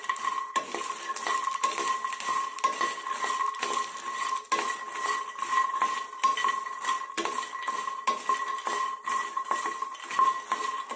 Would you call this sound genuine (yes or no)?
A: yes